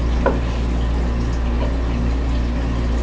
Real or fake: real